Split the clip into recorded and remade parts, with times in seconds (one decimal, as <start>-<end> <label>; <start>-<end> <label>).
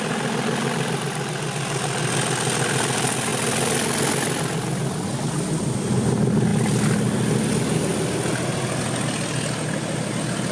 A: 0.0-10.5 recorded